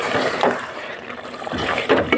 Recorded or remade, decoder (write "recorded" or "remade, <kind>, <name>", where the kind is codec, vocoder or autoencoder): remade, vocoder, BigVGAN v2